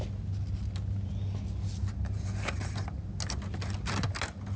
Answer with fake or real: real